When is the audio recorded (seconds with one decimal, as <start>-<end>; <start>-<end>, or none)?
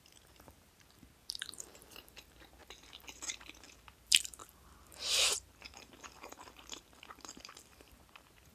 none